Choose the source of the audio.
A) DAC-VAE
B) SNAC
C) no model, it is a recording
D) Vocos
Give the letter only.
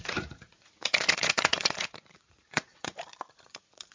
D